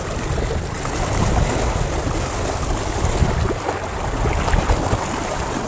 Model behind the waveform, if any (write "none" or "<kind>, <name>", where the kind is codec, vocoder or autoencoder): none